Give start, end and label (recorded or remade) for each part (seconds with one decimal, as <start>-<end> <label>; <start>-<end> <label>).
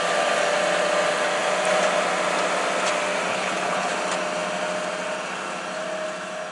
0.0-3.3 recorded; 3.3-3.9 remade; 3.9-6.5 recorded